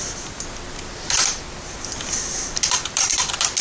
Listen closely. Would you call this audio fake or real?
real